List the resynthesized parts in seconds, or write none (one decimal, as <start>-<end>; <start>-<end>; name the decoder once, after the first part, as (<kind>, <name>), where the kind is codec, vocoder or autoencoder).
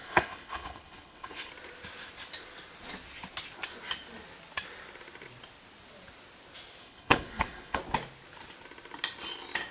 0.0-1.5 (codec, HILCodec); 6.8-7.8